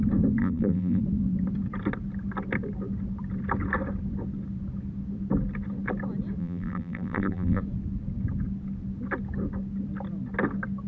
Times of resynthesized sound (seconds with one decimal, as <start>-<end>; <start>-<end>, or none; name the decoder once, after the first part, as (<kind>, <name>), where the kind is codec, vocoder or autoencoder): 0.4-1.0 (vocoder, BigVGAN v2); 6.4-7.6